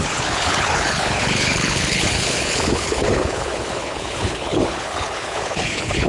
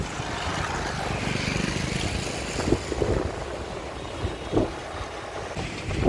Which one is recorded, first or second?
second